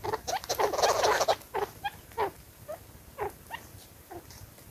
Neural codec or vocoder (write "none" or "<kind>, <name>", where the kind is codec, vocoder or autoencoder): none